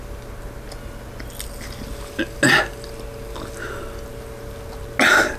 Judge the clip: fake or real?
real